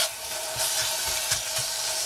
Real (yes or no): yes